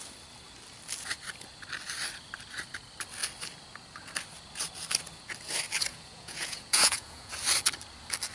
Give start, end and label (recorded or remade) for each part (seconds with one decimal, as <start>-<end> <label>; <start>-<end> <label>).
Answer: 0.0-5.9 recorded; 5.9-7.3 remade; 7.3-8.3 recorded